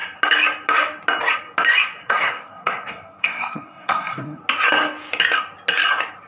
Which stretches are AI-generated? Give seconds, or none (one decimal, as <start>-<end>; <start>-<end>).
2.0-4.4